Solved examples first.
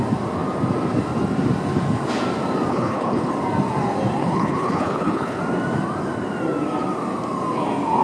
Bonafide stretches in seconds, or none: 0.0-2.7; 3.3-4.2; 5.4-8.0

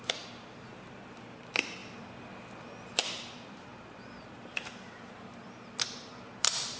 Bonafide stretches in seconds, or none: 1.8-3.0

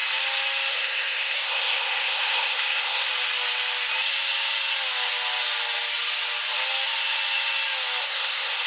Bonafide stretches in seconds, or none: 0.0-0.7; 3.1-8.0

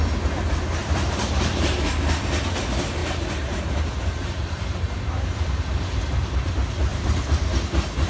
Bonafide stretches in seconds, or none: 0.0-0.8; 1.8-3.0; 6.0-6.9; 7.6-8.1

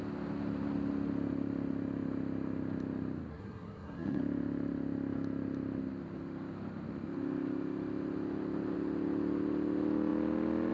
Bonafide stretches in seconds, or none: 0.0-3.3; 4.2-10.7